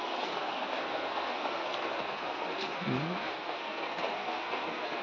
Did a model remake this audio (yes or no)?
yes